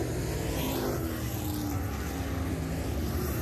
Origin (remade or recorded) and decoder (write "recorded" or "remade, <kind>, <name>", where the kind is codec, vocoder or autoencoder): recorded